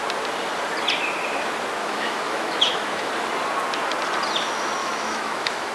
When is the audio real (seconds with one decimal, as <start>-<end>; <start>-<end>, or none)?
0.0-1.8; 3.1-4.8